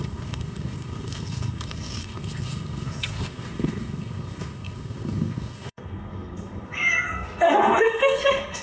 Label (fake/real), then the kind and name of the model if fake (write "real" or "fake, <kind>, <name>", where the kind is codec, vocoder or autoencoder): fake, codec, SNAC